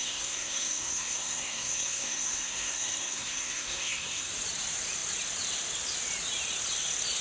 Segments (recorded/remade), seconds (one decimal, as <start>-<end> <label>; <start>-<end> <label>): 0.0-4.3 remade; 4.3-7.2 recorded